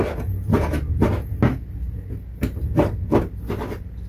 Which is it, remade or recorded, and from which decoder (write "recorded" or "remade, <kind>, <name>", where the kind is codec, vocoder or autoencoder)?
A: recorded